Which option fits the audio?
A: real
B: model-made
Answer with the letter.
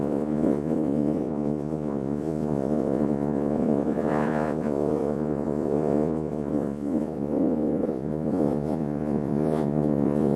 B